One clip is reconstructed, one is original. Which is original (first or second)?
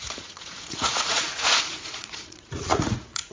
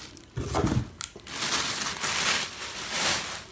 second